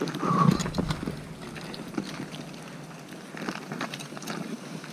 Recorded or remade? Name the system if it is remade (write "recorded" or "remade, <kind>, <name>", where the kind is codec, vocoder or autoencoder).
recorded